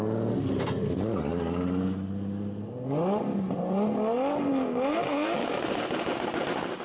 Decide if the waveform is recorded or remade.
recorded